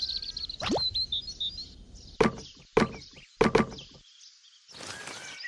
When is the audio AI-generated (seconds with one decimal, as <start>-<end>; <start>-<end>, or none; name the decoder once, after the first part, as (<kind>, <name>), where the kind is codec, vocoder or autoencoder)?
none